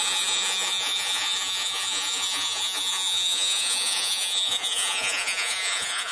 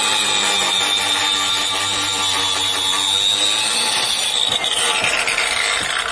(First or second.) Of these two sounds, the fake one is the first